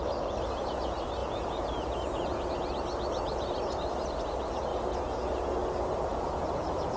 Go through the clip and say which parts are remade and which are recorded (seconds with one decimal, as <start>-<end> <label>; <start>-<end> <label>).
0.0-1.2 recorded; 1.2-2.5 remade; 2.5-4.7 recorded; 4.7-5.4 remade; 5.4-6.1 recorded; 6.1-7.0 remade